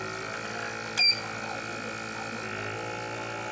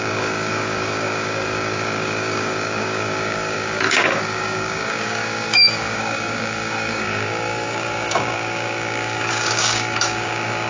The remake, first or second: second